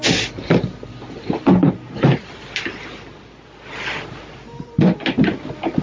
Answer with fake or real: real